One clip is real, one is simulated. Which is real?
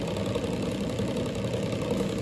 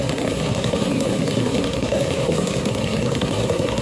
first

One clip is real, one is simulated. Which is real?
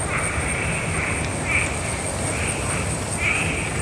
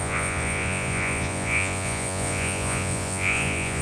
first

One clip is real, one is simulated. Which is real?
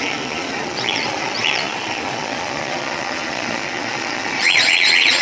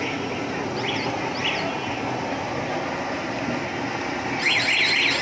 second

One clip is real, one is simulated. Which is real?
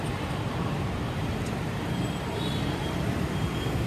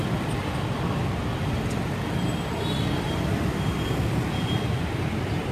second